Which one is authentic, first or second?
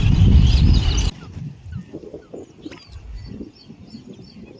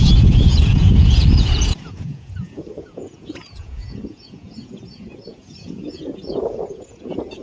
first